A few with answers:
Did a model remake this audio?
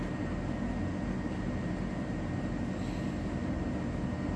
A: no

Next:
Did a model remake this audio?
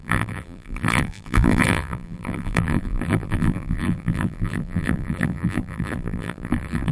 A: yes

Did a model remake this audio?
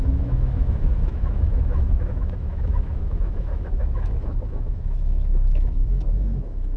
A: yes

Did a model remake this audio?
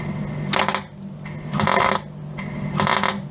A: no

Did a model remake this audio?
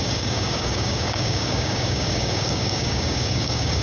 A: yes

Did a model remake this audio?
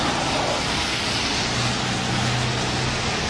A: no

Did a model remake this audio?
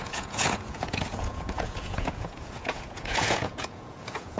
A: yes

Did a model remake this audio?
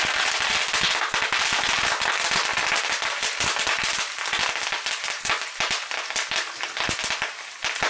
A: no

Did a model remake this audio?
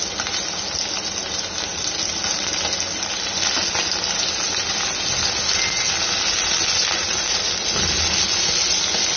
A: no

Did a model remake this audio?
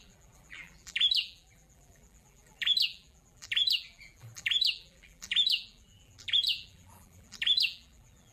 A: yes